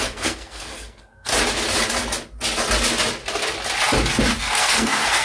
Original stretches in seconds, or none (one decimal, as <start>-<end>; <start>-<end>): 1.3-4.4